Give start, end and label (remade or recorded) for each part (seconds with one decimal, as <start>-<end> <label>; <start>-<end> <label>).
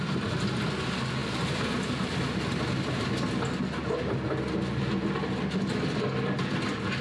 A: 0.0-7.0 recorded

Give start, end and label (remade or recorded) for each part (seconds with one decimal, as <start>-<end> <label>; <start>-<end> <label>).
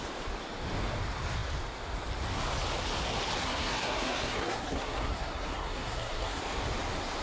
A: 0.0-3.4 recorded; 3.4-6.4 remade; 6.4-7.2 recorded